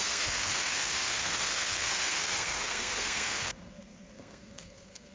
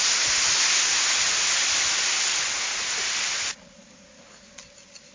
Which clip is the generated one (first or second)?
first